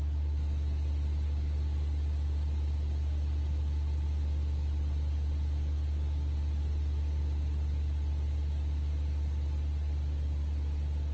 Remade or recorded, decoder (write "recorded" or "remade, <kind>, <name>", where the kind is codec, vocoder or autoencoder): recorded